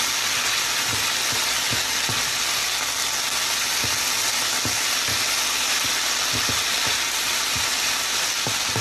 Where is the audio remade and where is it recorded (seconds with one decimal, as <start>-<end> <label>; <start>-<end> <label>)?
0.0-8.8 recorded